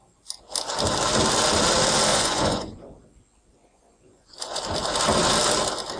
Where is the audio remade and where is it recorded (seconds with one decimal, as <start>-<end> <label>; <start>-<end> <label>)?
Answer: 0.0-2.1 recorded; 2.1-2.8 remade; 2.8-3.6 recorded; 3.6-4.6 remade; 4.6-6.0 recorded